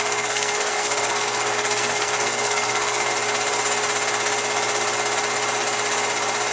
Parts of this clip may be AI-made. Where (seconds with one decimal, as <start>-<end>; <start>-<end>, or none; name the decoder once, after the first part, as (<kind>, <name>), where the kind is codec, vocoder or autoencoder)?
0.0-3.1 (codec, SNAC)